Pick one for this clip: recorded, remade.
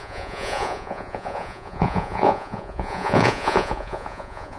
remade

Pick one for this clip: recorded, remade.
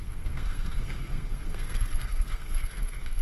remade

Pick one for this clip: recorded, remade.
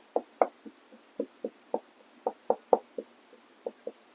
recorded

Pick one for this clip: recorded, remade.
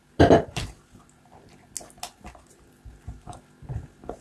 recorded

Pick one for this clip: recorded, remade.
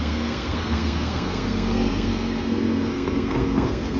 remade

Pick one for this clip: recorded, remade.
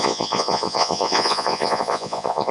remade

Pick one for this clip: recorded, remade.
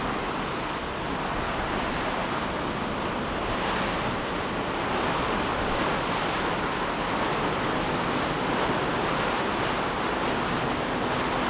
recorded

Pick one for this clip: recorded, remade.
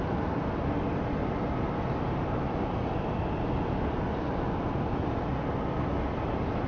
recorded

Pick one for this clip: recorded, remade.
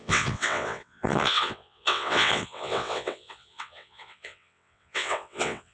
remade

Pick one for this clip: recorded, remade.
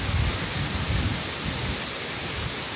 recorded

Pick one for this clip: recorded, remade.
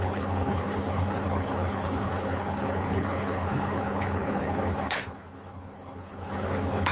remade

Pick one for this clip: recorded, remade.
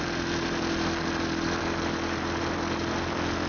recorded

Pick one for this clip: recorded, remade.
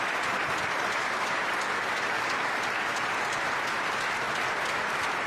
recorded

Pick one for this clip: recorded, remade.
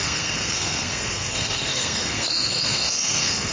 remade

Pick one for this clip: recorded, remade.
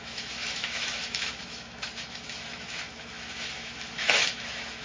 remade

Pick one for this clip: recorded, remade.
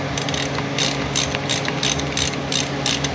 recorded